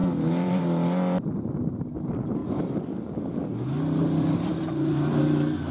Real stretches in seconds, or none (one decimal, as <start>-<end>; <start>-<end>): 0.6-2.4; 3.3-4.0; 5.2-5.7